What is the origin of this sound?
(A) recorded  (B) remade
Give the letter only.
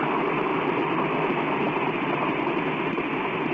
B